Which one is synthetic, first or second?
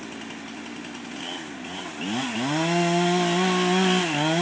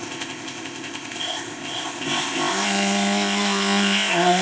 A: second